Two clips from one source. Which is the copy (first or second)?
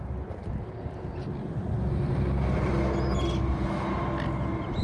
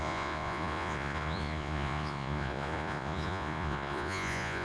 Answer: second